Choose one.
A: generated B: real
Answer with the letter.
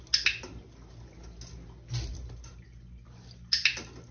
B